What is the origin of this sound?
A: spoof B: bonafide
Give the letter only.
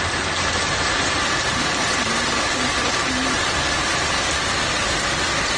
B